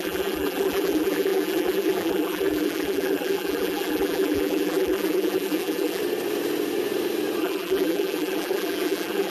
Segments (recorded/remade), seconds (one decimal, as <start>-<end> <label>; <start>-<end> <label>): 0.0-6.0 remade; 6.0-7.4 recorded; 7.4-9.3 remade